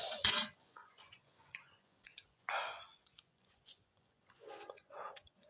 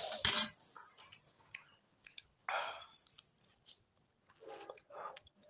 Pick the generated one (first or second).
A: first